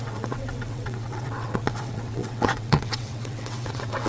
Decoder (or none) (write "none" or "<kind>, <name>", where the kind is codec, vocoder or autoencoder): vocoder, WaveNeXt